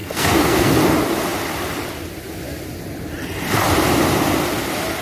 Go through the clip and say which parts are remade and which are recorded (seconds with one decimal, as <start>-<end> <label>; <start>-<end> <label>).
0.0-0.7 remade; 0.7-5.0 recorded